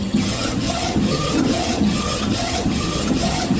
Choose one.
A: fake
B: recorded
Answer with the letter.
A